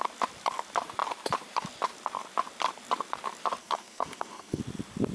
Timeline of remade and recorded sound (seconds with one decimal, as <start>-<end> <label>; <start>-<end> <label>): 0.0-3.6 recorded; 3.6-4.6 remade; 4.6-5.1 recorded